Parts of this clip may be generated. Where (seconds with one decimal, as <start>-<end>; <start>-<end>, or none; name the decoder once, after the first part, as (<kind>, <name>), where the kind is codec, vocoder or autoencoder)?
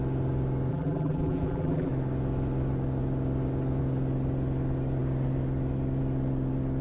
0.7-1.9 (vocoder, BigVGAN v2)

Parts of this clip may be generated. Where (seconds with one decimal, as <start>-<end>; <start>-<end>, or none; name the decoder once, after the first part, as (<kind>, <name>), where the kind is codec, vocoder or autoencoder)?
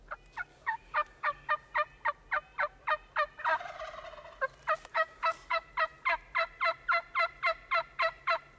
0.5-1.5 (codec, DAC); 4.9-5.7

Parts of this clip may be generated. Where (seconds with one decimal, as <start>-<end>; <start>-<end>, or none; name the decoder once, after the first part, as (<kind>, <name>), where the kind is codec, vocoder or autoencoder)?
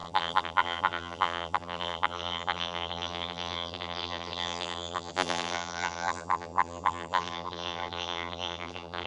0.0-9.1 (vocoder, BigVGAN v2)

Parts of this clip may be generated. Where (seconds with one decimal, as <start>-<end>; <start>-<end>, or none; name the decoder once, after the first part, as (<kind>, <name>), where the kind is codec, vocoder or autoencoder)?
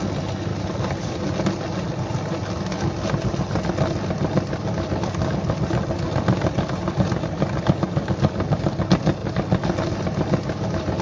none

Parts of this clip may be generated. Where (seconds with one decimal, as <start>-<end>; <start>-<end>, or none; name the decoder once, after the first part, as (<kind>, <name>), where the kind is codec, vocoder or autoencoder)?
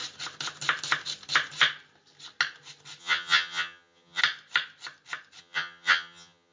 3.0-4.2 (vocoder, HiFi-GAN); 5.4-6.5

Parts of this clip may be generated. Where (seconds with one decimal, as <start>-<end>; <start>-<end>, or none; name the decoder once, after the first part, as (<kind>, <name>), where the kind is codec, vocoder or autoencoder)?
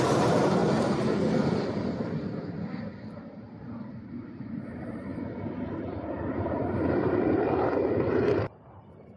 0.0-0.6 (vocoder, BigVGAN v2); 4.5-5.1; 5.7-9.2